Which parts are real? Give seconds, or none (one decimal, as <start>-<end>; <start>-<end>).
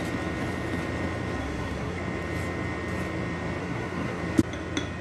0.0-1.4; 2.0-3.6; 4.2-5.0